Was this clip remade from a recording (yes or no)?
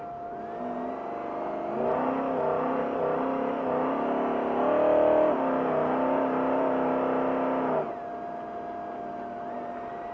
no